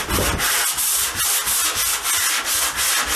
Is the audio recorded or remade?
recorded